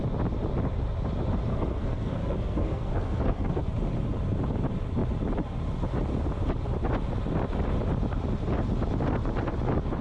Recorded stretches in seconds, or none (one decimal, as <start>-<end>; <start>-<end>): 0.0-1.5; 3.7-10.0